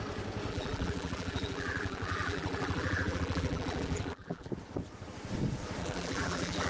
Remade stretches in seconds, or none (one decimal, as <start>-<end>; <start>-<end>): 0.5-4.5; 5.8-6.7